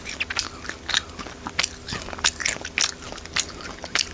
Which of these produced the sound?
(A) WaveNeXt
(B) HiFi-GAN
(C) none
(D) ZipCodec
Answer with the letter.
C